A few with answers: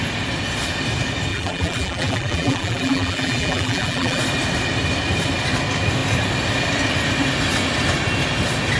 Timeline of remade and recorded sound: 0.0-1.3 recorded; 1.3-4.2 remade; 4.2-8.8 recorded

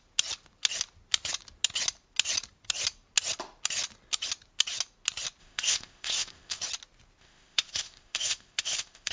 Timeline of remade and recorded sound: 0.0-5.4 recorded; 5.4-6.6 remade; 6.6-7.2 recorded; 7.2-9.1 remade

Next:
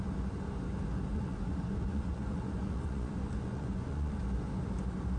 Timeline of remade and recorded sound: 0.0-1.1 recorded; 1.1-4.2 remade; 4.2-5.2 recorded

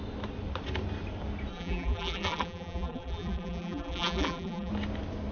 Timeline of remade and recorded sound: 0.0-1.5 recorded; 1.5-4.7 remade; 4.7-5.3 recorded

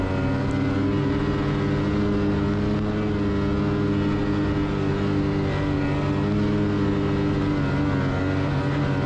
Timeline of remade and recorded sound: 0.0-9.1 recorded

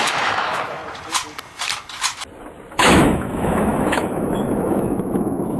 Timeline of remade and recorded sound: 0.0-0.8 remade; 0.8-2.7 recorded; 2.7-5.6 remade

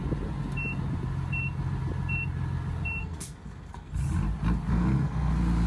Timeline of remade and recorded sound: 0.0-3.0 recorded; 3.0-3.9 remade; 3.9-4.7 recorded; 4.7-5.3 remade; 5.3-5.7 recorded